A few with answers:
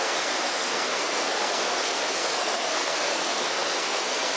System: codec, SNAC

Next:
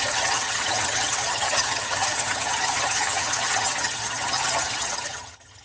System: vocoder, HiFi-GAN